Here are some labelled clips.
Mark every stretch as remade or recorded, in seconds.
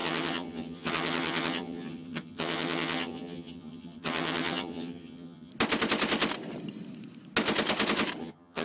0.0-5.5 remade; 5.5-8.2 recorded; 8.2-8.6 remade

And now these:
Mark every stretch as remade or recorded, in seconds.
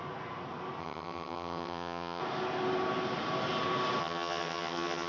0.0-0.8 recorded; 0.8-2.2 remade; 2.2-4.0 recorded; 4.0-5.1 remade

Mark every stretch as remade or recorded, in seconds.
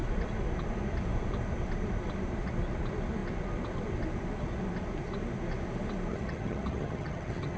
0.0-6.1 recorded; 6.1-7.6 remade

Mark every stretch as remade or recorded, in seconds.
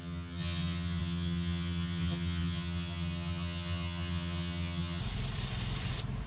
0.0-5.0 remade; 5.0-6.3 recorded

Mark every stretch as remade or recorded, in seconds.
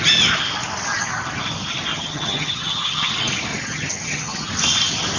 0.0-1.9 recorded; 1.9-3.1 remade; 3.1-3.5 recorded; 3.5-4.5 remade; 4.5-5.2 recorded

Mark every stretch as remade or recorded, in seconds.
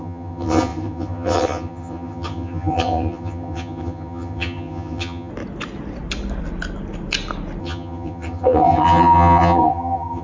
0.0-5.3 remade; 5.3-7.6 recorded; 7.6-10.2 remade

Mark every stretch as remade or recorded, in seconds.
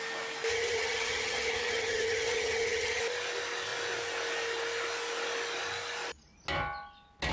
0.0-0.5 recorded; 0.5-3.0 remade; 3.0-7.3 recorded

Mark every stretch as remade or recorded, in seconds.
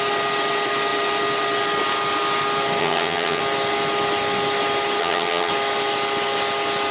0.0-2.8 recorded; 2.8-3.4 remade; 3.4-5.0 recorded; 5.0-5.5 remade; 5.5-6.9 recorded